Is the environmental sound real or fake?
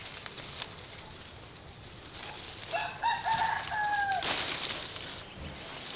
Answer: real